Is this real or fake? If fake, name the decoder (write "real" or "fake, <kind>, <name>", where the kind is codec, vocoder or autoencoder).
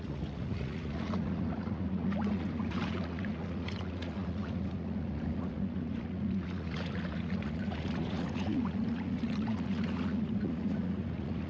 fake, vocoder, Vocos